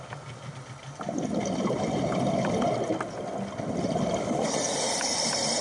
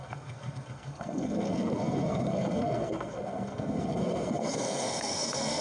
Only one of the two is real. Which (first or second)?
first